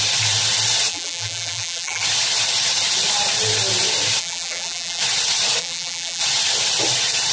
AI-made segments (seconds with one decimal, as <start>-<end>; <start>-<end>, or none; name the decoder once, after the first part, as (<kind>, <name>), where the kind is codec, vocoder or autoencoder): 0.9-2.0 (vocoder, BigVGAN v2); 4.2-5.0; 5.6-6.2